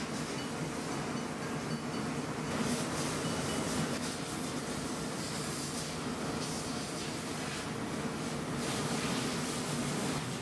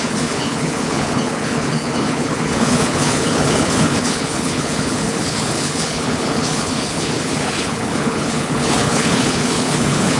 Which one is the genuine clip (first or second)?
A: first